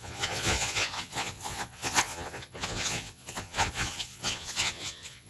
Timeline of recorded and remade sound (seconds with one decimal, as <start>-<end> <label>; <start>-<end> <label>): 0.0-5.3 remade